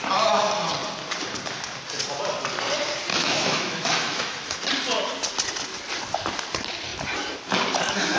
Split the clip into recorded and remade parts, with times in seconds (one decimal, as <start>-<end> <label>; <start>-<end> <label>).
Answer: 0.0-3.1 recorded; 3.1-4.6 remade; 4.6-8.2 recorded